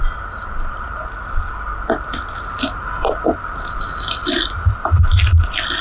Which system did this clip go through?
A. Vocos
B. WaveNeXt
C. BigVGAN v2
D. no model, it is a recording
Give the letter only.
D